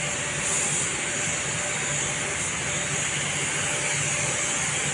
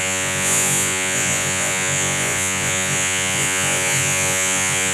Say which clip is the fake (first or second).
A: second